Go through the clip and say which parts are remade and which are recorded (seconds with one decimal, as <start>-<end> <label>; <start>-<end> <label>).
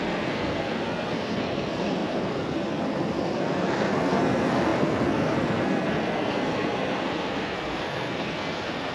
0.0-8.9 remade